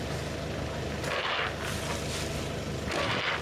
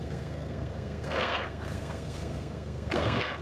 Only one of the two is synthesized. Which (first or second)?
second